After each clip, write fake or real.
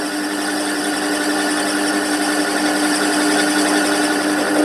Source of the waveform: real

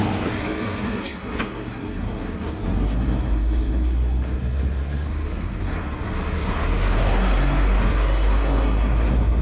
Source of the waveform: fake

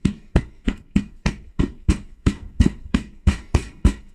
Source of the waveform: fake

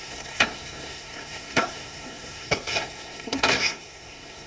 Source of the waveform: fake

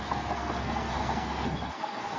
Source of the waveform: fake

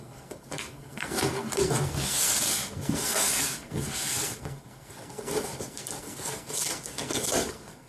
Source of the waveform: fake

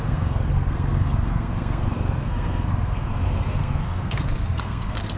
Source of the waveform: fake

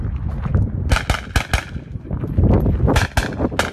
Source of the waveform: real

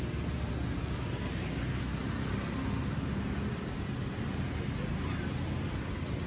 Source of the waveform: real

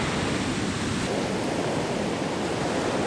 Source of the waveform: real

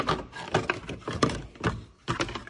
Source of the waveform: real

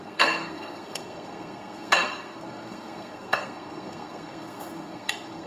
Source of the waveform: fake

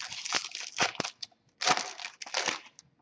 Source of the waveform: real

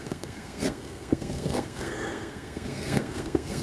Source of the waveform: fake